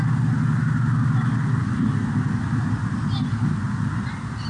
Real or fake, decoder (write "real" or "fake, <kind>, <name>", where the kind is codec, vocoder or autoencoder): real